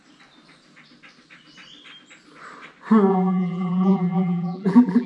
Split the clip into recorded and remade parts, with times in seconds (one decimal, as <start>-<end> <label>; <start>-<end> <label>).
0.0-3.1 recorded; 3.1-5.1 remade